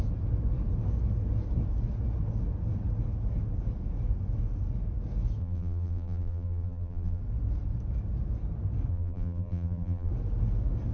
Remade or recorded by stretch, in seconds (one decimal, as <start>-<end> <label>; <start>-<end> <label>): 0.0-5.4 recorded; 5.4-7.2 remade; 7.2-8.9 recorded; 8.9-10.1 remade; 10.1-10.9 recorded